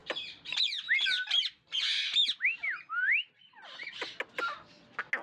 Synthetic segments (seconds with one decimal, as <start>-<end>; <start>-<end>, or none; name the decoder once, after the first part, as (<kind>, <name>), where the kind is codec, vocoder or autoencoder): 0.0-0.6 (vocoder, BigVGAN v2)